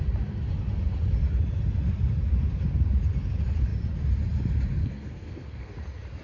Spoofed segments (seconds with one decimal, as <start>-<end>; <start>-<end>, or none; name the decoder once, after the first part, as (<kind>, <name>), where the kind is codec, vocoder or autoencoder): 4.8-5.7 (codec, SNAC)